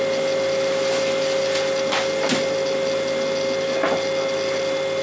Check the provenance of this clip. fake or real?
real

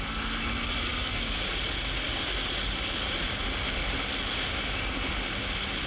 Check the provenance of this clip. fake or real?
real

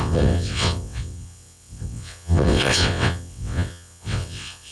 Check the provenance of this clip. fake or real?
fake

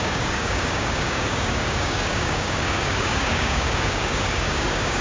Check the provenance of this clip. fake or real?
fake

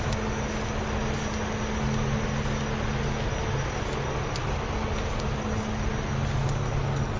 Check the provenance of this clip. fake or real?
real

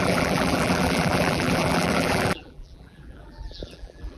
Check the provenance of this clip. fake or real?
fake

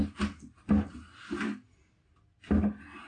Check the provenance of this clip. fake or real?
real